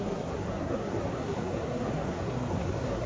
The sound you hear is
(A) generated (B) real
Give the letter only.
A